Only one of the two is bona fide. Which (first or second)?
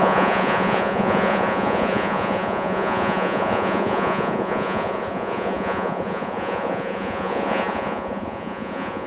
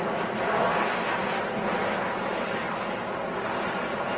second